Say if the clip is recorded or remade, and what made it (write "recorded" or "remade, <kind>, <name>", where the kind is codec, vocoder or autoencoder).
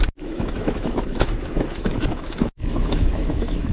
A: remade, autoencoder, DAC-VAE